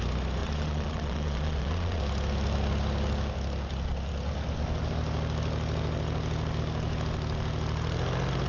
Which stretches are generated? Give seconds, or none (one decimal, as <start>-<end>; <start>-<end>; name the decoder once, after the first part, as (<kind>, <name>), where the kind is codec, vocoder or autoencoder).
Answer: 0.4-2.0 (vocoder, Vocos)

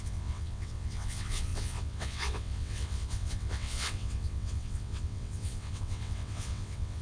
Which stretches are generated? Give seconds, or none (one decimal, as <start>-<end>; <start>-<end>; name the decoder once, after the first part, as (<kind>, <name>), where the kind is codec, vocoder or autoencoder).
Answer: 0.0-7.0 (vocoder, WaveNeXt)

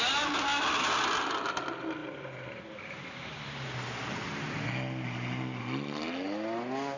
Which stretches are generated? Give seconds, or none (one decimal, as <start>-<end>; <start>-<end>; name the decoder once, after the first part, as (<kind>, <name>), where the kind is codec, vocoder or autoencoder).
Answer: none